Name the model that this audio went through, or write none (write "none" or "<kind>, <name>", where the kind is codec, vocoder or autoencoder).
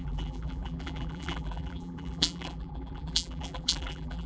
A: vocoder, BigVGAN v2